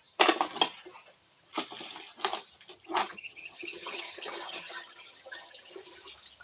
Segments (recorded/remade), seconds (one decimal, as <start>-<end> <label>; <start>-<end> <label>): 0.0-3.0 recorded; 3.0-5.7 remade; 5.7-6.4 recorded